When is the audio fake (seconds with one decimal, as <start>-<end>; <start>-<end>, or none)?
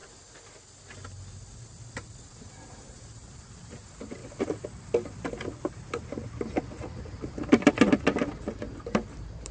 2.3-4.2; 8.4-9.5